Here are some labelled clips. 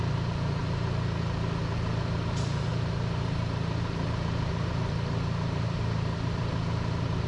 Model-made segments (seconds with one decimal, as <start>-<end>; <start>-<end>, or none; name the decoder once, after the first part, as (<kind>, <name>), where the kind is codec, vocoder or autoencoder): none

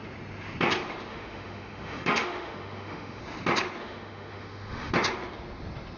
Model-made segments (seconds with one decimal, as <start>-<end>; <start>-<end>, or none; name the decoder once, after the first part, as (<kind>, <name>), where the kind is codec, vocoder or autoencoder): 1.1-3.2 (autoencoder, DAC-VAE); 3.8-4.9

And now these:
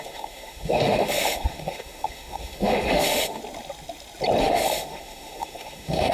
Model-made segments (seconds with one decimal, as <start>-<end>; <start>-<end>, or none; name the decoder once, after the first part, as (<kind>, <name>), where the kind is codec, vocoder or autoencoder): 0.0-3.4 (autoencoder, DAC-VAE); 4.4-6.1

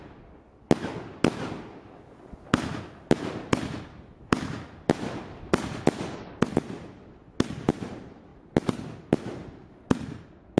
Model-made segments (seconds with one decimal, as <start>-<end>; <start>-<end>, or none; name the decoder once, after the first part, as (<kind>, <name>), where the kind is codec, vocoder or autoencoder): none

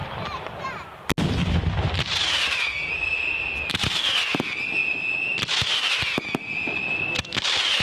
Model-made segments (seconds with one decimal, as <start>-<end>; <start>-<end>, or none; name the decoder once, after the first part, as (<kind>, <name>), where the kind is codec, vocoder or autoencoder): none

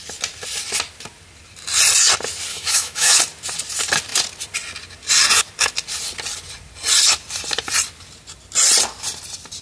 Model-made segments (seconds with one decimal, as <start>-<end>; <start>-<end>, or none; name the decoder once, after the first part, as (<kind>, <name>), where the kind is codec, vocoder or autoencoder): 2.5-3.2 (autoencoder, DAC-VAE)

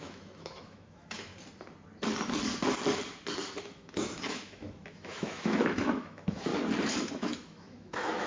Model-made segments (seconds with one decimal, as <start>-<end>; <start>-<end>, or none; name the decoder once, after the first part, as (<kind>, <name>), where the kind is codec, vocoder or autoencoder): 0.0-1.3 (autoencoder, DAC-VAE); 3.6-6.5; 7.1-8.3

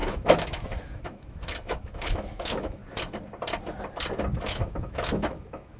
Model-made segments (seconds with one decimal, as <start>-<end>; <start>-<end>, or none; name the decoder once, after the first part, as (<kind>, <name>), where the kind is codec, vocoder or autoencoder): 0.0-2.8 (autoencoder, DAC-VAE); 4.4-5.8